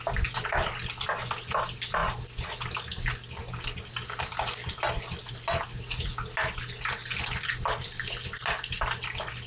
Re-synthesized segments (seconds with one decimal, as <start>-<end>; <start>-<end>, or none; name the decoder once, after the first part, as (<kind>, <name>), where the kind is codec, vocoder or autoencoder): none